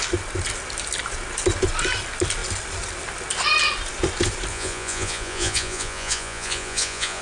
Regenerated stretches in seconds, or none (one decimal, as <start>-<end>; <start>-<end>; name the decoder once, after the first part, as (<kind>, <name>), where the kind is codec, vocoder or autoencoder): 4.5-7.2 (vocoder, Vocos)